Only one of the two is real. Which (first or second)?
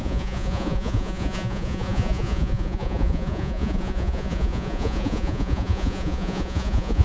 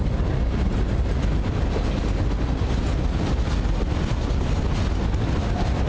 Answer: second